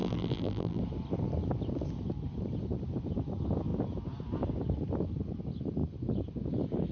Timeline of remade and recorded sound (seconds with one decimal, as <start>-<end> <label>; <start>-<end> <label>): 0.0-0.8 remade; 0.8-6.9 recorded